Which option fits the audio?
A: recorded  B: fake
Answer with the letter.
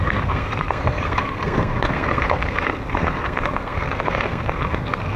B